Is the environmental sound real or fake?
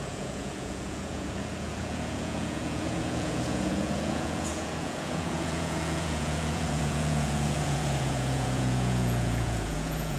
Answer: fake